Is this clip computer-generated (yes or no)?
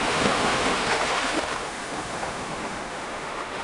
yes